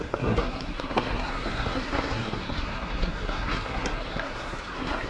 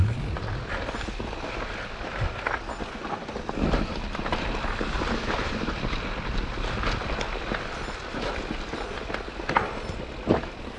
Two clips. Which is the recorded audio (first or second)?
second